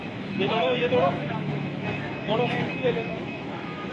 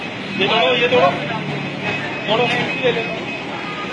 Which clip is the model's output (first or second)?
first